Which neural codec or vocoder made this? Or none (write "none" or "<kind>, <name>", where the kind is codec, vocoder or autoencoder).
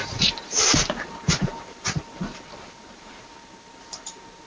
vocoder, BigVGAN v2